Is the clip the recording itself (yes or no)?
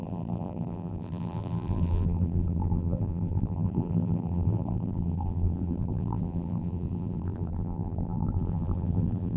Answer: no